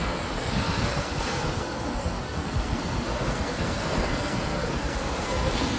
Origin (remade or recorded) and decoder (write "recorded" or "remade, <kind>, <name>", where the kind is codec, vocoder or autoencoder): remade, codec, SNAC